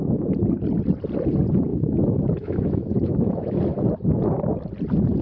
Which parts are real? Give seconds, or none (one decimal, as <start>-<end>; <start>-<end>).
0.0-1.7; 3.6-5.2